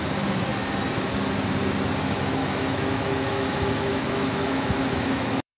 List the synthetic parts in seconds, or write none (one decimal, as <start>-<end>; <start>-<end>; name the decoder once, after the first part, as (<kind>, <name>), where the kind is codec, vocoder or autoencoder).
2.4-5.6 (autoencoder, DAC-VAE)